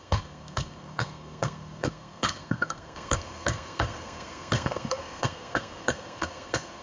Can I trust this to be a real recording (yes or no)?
no